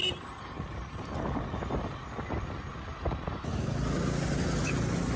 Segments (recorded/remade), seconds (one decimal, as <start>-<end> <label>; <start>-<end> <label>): 0.0-5.2 recorded